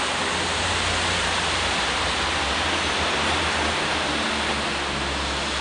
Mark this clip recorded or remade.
recorded